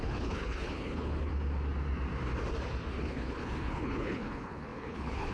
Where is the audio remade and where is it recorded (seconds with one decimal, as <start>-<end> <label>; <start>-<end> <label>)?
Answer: 0.0-1.3 remade; 1.3-2.9 recorded; 2.9-5.3 remade